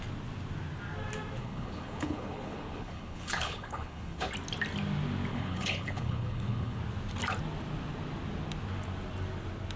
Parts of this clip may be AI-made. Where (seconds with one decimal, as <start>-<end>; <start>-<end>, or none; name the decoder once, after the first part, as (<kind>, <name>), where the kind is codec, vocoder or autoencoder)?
1.4-4.3 (codec, HILCodec); 5.3-6.8